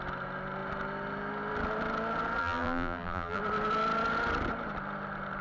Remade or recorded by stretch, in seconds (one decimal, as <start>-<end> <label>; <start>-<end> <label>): 0.0-2.4 recorded; 2.4-3.4 remade; 3.4-5.4 recorded

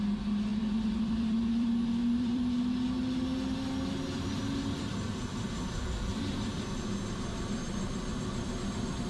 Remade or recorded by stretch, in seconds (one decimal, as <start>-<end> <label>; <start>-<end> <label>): 0.0-0.5 recorded; 0.5-2.6 remade; 2.6-4.9 recorded; 4.9-8.5 remade; 8.5-9.1 recorded

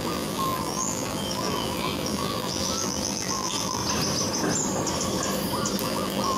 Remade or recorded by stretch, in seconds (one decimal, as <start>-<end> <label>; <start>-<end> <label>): 0.0-3.8 remade; 3.8-5.8 recorded; 5.8-6.4 remade

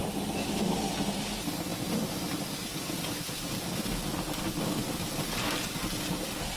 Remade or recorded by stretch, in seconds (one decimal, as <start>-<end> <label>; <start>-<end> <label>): 0.0-6.6 recorded

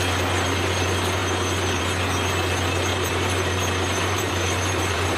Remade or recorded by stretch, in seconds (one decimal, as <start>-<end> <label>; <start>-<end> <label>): 0.0-2.9 recorded; 2.9-5.2 remade

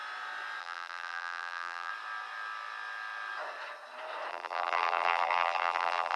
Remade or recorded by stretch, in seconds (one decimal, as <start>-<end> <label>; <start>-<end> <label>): 0.0-0.6 recorded; 0.6-1.9 remade; 1.9-4.3 recorded; 4.3-6.2 remade

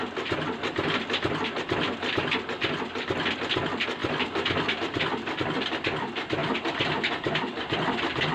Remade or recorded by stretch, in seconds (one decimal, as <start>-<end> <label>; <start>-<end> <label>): 0.0-4.0 recorded; 4.0-5.4 remade; 5.4-6.4 recorded; 6.4-8.3 remade

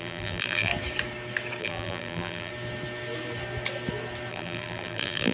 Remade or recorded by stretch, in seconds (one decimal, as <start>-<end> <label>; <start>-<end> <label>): 0.0-0.7 remade; 0.7-1.6 recorded; 1.6-2.5 remade; 2.5-4.3 recorded; 4.3-5.3 remade